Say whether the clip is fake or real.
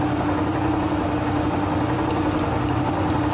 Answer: real